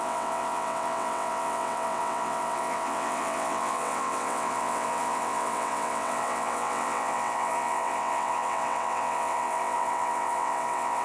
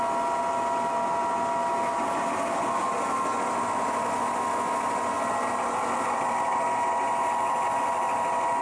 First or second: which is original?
second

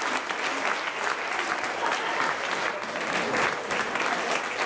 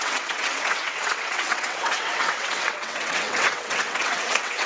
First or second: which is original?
first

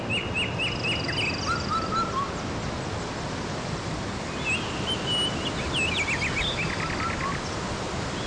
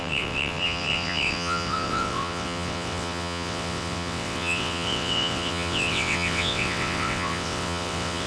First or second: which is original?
first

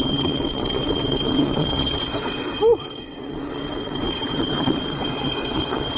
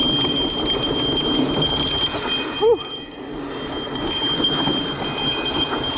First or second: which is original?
second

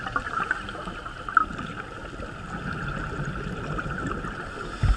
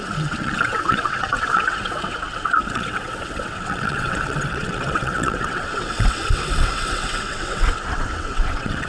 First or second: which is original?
first